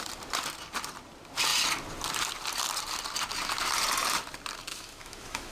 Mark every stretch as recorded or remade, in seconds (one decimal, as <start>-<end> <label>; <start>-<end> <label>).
0.0-4.7 recorded; 4.7-5.5 remade